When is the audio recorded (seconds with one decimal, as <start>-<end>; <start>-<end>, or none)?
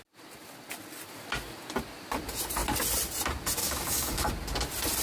0.0-3.6; 4.3-5.0